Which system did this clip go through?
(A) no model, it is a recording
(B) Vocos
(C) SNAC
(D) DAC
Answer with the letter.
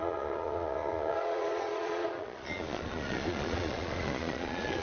B